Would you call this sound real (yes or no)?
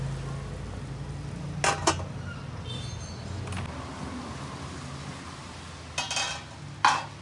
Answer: yes